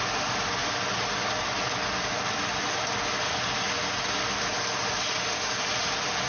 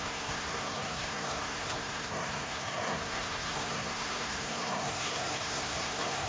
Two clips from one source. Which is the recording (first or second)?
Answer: first